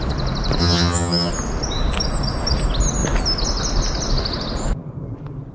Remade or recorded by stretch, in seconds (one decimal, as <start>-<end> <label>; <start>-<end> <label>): 0.0-0.6 recorded; 0.6-1.3 remade; 1.3-5.5 recorded